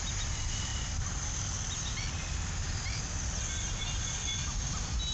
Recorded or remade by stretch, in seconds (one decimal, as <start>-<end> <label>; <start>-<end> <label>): 0.0-5.1 recorded